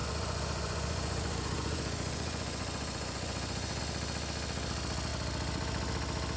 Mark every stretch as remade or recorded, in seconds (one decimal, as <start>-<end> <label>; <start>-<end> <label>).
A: 0.0-3.8 remade; 3.8-6.4 recorded